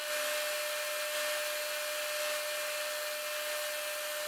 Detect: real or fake real